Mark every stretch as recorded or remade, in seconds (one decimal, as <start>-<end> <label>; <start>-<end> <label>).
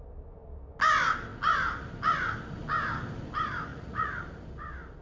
0.0-3.7 recorded; 3.7-4.2 remade; 4.2-5.0 recorded